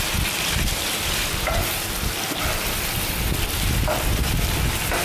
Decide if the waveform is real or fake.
real